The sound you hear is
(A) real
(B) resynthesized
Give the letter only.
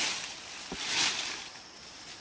B